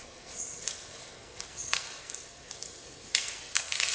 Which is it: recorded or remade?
remade